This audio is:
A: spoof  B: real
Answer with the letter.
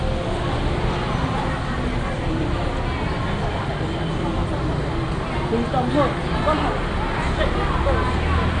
B